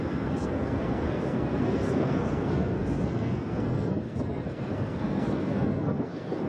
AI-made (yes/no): yes